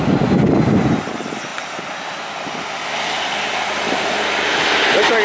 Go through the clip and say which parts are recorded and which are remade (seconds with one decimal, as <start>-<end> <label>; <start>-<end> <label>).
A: 0.0-5.2 recorded